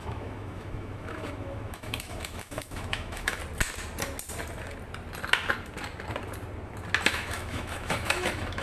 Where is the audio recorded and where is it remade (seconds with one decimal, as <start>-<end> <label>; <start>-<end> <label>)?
0.0-3.4 remade; 3.4-7.1 recorded; 7.1-8.6 remade